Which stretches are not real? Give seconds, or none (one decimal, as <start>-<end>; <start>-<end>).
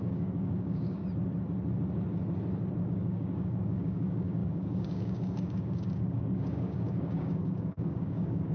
0.0-1.0; 2.8-8.5